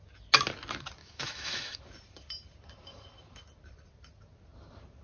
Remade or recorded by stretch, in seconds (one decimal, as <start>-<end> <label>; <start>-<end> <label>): 0.0-1.0 recorded; 1.0-1.8 remade; 1.8-5.0 recorded